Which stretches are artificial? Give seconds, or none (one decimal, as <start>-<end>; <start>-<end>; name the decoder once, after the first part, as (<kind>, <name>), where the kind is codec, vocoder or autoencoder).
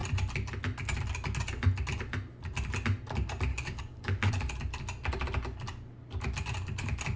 3.5-4.3 (codec, DAC)